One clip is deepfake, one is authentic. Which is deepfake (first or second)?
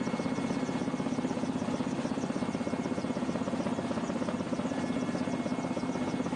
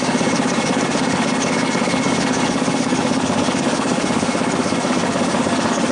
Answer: second